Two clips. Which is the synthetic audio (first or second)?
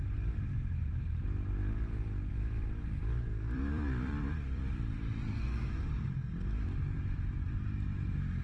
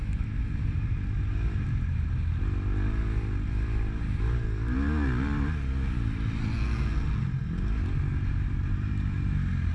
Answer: first